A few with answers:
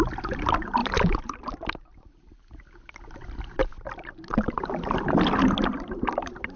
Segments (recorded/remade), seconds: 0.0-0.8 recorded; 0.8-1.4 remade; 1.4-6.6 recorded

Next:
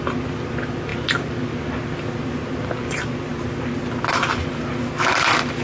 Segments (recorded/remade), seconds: 0.0-5.6 recorded

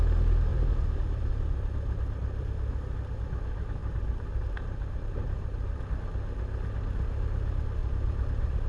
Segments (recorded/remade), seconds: 0.0-0.5 recorded; 0.5-1.3 remade; 1.3-3.8 recorded; 3.8-5.8 remade; 5.8-7.8 recorded; 7.8-8.7 remade

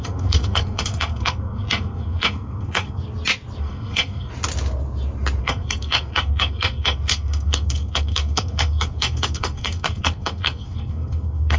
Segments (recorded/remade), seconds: 0.0-3.0 remade; 3.0-3.6 recorded; 3.6-4.3 remade; 4.3-5.4 recorded; 5.4-11.6 remade

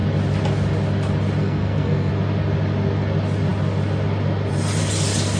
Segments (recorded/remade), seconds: 0.0-1.4 recorded; 1.4-2.1 remade; 2.1-5.4 recorded